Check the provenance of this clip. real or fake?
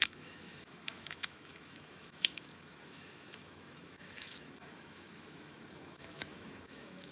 fake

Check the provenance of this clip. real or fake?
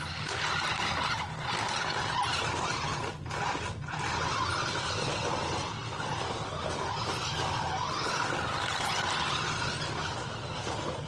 real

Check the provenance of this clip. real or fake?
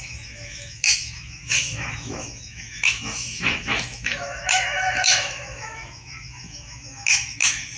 fake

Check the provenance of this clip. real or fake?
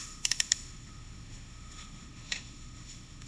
fake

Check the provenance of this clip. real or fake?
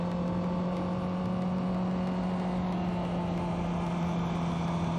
real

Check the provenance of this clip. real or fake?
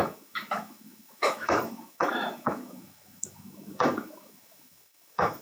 fake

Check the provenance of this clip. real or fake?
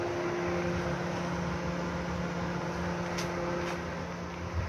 real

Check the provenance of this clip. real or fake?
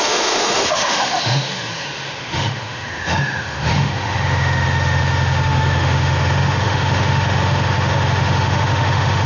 fake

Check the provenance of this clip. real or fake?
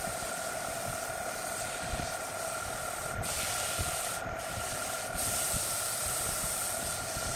real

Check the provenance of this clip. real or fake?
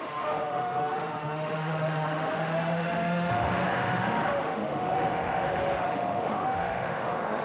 fake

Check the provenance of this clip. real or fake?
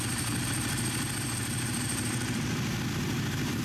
real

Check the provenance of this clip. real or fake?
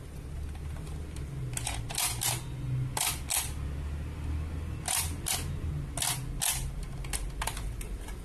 real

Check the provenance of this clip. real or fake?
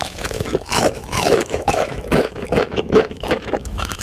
fake